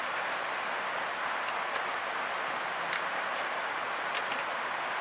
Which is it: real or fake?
real